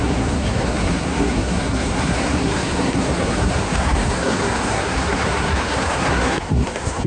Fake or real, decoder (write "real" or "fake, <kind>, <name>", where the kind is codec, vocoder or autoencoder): fake, codec, SNAC